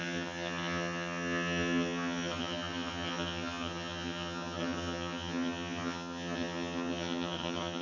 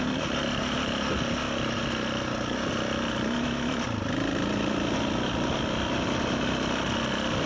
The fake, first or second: first